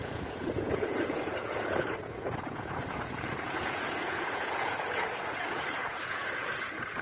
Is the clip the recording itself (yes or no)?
no